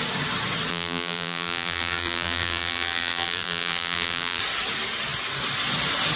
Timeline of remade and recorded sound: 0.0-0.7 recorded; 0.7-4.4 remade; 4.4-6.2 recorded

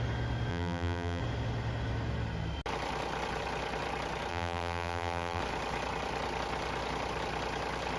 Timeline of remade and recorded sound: 0.0-0.5 recorded; 0.5-1.2 remade; 1.2-4.3 recorded; 4.3-5.4 remade; 5.4-8.0 recorded

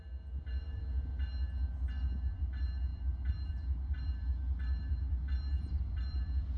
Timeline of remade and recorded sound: 0.0-1.1 remade; 1.1-2.3 recorded; 2.3-6.6 remade

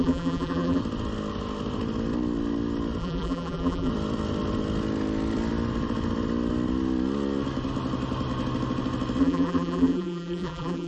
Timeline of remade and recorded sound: 0.0-0.8 remade; 0.8-3.0 recorded; 3.0-3.9 remade; 3.9-9.2 recorded; 9.2-10.9 remade